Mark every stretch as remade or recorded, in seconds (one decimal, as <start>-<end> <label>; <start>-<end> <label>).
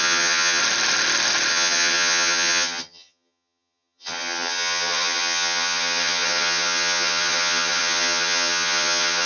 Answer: 0.0-0.6 remade; 0.6-1.5 recorded; 1.5-9.3 remade